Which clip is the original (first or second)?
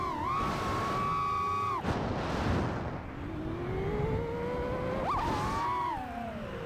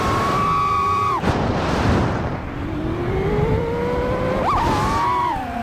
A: first